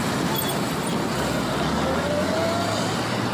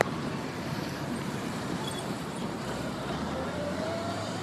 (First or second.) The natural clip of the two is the first